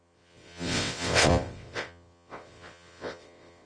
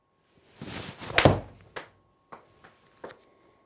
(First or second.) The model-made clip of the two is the first